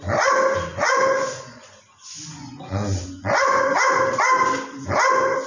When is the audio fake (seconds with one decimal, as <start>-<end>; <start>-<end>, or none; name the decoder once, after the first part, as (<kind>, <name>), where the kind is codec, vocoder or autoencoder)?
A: 0.7-4.0 (vocoder, Vocos)